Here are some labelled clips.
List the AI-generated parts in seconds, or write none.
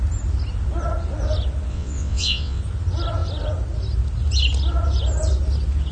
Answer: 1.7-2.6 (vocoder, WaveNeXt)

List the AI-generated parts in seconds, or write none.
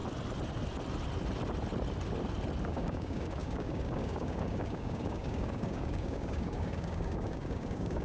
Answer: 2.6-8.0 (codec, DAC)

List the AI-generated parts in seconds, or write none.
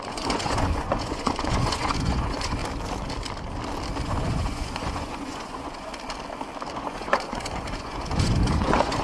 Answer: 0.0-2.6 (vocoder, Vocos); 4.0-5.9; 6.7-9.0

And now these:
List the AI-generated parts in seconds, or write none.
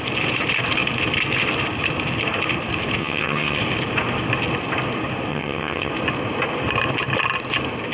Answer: 3.0-3.6 (vocoder, HiFi-GAN); 5.3-5.9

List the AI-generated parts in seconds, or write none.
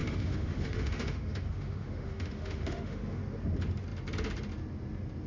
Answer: 0.0-3.2 (autoencoder, DAC-VAE)